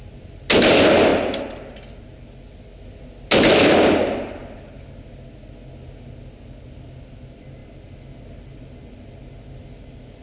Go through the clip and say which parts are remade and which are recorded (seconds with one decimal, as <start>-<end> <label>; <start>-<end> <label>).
0.0-10.2 recorded